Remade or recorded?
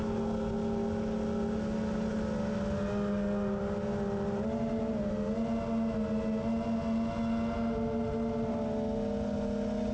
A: recorded